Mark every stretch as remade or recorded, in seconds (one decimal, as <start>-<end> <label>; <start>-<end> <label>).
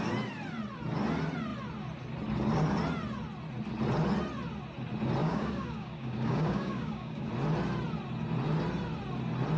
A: 0.0-5.2 recorded; 5.2-7.3 remade; 7.3-9.6 recorded